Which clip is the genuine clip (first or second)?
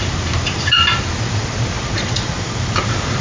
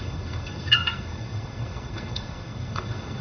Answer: first